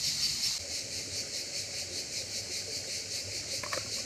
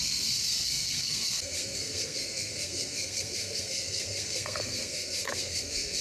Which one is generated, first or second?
second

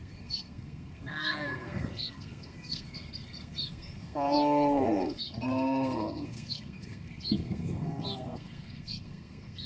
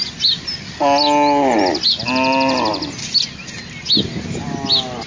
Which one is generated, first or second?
first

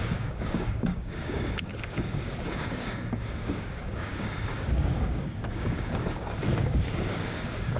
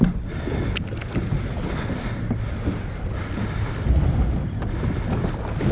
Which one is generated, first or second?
first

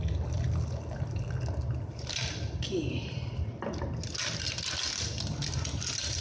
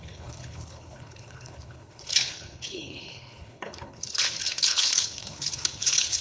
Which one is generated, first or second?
second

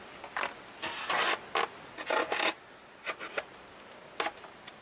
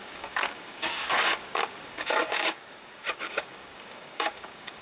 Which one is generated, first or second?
second